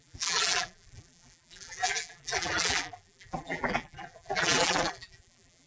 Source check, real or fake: fake